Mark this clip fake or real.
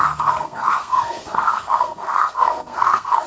fake